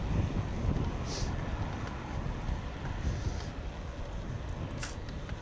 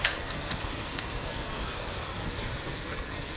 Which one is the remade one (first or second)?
second